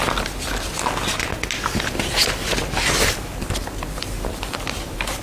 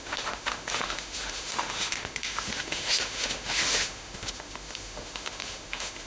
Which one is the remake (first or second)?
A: second